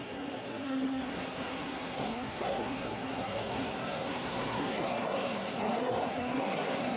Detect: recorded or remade remade